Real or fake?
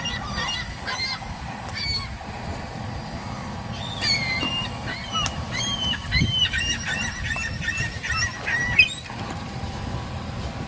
real